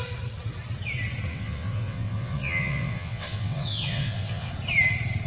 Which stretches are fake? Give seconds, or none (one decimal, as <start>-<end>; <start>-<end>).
1.3-4.5